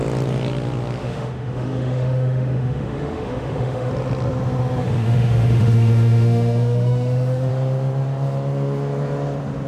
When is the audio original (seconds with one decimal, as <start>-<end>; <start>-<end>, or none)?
0.0-1.0; 3.9-4.8; 7.5-9.7